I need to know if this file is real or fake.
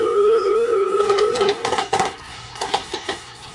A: fake